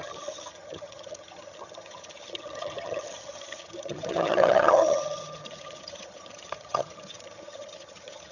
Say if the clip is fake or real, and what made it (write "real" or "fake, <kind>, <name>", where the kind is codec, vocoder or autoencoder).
fake, vocoder, HiFi-GAN